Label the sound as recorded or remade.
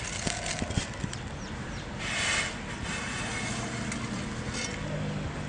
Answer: recorded